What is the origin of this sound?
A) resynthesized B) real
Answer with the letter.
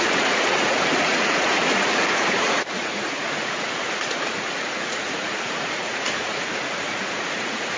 A